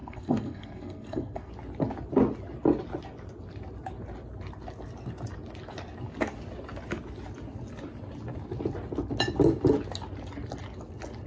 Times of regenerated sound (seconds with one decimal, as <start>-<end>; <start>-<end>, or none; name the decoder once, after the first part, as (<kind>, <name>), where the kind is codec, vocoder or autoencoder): 0.0-1.5 (codec, SNAC)